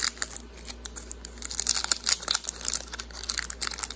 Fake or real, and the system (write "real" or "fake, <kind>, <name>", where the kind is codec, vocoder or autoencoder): real